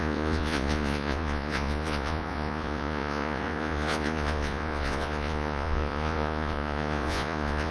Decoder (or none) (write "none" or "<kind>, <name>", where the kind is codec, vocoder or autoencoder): vocoder, Vocos